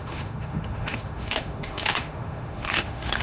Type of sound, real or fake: fake